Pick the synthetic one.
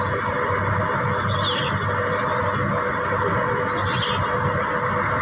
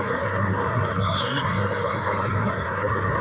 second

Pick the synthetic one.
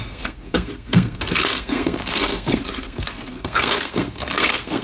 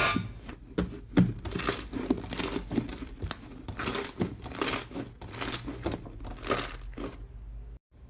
first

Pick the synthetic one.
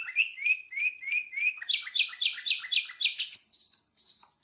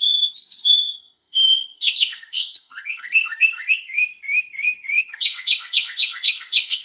second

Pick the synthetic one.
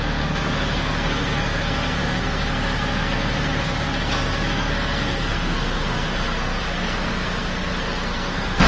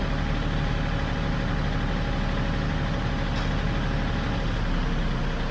first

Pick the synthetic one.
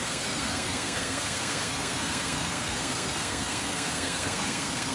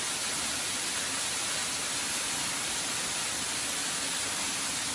first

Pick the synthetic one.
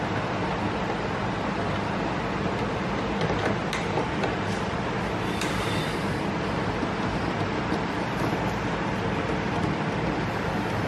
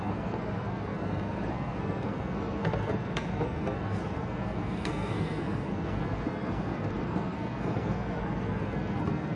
second